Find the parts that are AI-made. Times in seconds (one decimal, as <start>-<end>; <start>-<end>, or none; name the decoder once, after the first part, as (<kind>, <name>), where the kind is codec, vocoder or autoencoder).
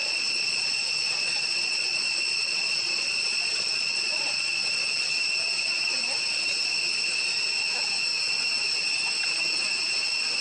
0.0-4.8 (vocoder, Vocos)